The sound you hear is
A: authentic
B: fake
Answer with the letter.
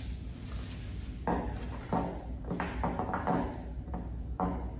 A